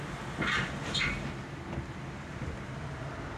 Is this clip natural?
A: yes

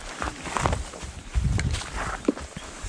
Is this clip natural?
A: no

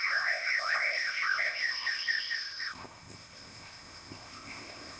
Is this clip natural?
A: no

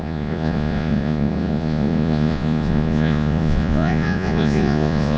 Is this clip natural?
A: no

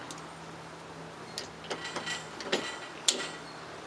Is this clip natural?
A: yes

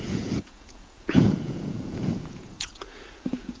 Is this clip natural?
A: no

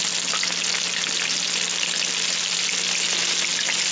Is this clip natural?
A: yes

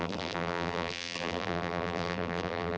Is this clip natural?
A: no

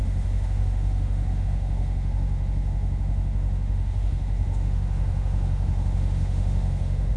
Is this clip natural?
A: no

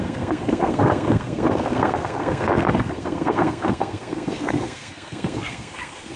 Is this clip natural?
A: no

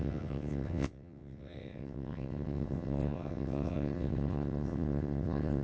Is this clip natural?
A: no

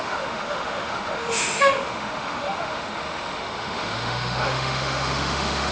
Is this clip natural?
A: no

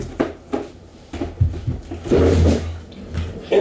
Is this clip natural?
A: yes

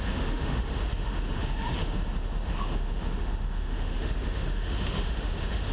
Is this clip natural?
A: no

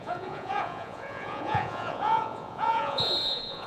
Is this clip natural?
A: no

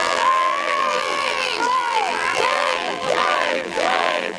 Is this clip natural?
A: no